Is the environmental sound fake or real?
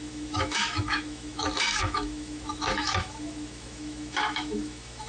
fake